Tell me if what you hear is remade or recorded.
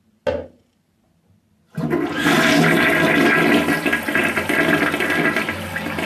recorded